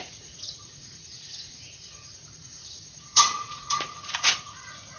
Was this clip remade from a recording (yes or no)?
yes